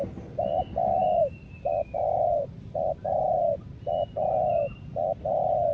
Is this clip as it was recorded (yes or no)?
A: yes